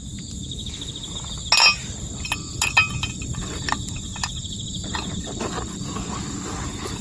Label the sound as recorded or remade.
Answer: recorded